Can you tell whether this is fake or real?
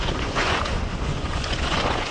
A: fake